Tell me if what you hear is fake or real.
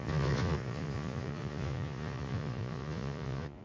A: fake